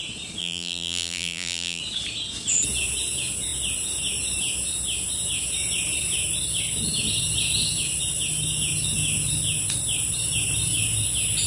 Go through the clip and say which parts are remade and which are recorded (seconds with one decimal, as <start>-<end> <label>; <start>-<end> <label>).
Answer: 0.0-0.4 recorded; 0.4-1.8 remade; 1.8-11.5 recorded